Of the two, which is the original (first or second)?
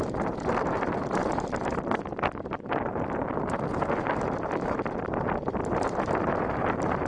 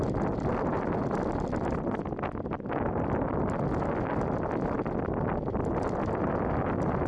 second